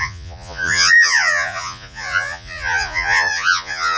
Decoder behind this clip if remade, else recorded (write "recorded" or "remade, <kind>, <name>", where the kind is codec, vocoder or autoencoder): remade, vocoder, Vocos